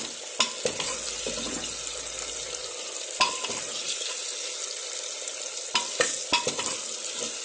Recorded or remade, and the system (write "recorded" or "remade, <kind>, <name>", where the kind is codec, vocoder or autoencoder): recorded